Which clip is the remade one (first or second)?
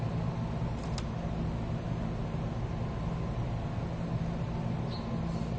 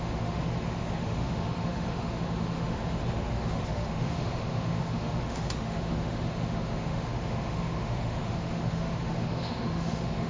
second